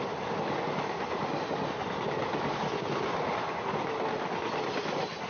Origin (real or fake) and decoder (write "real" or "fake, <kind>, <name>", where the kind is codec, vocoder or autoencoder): real